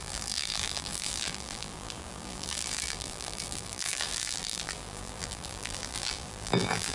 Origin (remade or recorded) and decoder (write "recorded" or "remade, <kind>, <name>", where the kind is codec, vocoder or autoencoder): remade, vocoder, BigVGAN v2